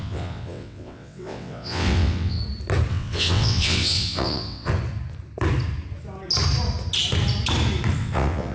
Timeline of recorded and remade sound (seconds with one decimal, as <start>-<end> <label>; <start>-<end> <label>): 0.0-2.4 remade; 2.4-2.9 recorded; 2.9-4.7 remade; 4.7-8.0 recorded; 8.0-8.5 remade